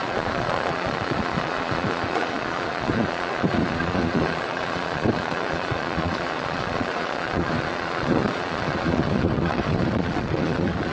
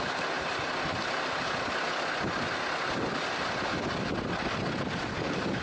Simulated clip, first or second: first